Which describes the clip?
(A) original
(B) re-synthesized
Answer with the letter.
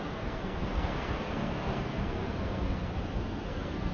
B